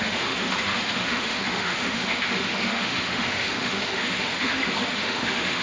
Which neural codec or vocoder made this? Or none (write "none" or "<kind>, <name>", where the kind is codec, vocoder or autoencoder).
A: autoencoder, DAC-VAE